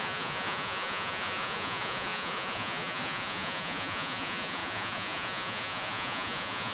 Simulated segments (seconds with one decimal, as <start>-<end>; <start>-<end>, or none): 0.0-6.7